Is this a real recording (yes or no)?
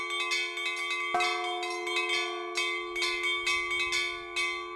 yes